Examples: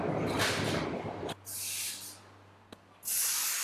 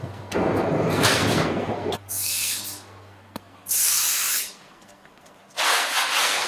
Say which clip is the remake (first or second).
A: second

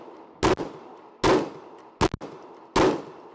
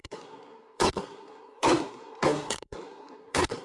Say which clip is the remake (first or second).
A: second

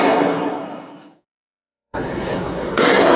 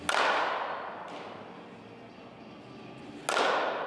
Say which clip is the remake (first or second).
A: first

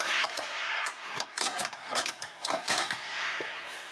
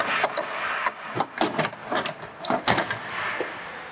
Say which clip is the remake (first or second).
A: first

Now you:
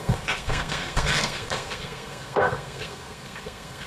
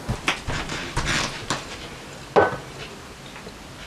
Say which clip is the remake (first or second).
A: first